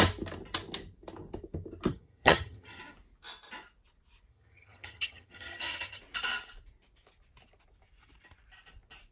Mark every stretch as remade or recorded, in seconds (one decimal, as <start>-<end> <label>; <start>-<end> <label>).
0.0-1.9 recorded; 1.9-2.8 remade; 2.8-4.3 recorded; 4.3-6.0 remade; 6.0-9.1 recorded